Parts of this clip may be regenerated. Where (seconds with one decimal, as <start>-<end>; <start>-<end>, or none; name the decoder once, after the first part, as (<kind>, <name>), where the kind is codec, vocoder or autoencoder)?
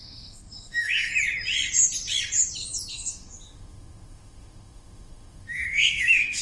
0.0-1.1 (autoencoder, DAC-VAE); 2.9-6.4